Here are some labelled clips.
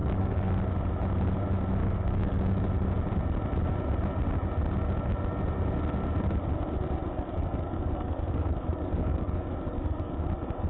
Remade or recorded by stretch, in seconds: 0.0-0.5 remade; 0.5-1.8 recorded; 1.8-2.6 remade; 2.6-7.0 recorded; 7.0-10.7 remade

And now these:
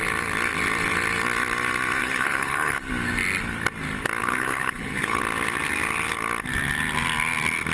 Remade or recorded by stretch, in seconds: 0.0-2.0 recorded; 2.0-2.9 remade; 2.9-4.2 recorded; 4.2-5.2 remade; 5.2-7.7 recorded